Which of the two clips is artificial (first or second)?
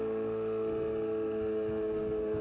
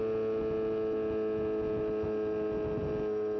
first